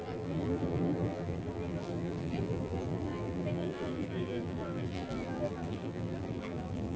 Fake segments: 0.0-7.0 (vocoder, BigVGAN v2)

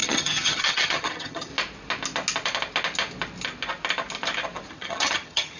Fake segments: 0.0-1.5 (vocoder, HiFi-GAN); 4.7-5.6

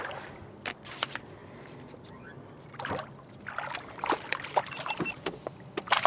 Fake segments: 1.4-3.1 (vocoder, BigVGAN v2)

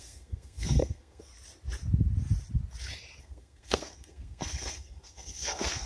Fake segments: 0.0-1.3 (codec, SNAC); 3.2-5.9

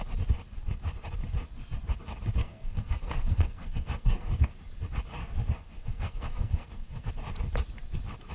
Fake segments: 2.4-4.5 (codec, SNAC); 5.2-7.1

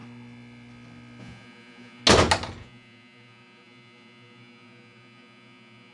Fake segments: 1.2-2.0 (vocoder, Vocos); 2.6-5.9

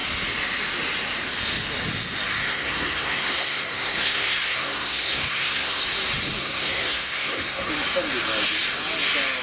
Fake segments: 2.4-5.8 (codec, SNAC); 6.4-7.7

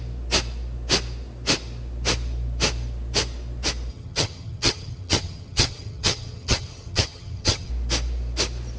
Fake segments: 3.9-7.7 (vocoder, HiFi-GAN)